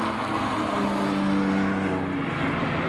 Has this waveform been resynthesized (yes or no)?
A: no